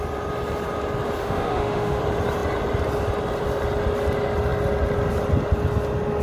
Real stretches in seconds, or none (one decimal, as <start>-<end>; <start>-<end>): 0.0-1.2; 2.0-6.2